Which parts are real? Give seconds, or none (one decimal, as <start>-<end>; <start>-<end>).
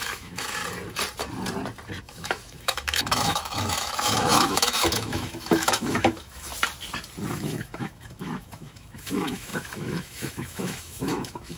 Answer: 0.6-2.0; 6.5-7.3